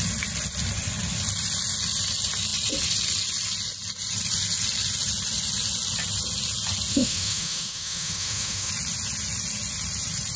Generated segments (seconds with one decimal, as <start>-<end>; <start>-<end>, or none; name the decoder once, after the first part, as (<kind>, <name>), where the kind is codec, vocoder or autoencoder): 6.9-8.7 (autoencoder, DAC-VAE)